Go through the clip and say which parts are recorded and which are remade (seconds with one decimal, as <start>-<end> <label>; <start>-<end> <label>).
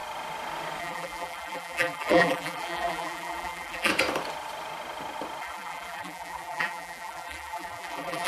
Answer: 0.0-0.8 recorded; 0.8-3.9 remade; 3.9-5.4 recorded; 5.4-8.3 remade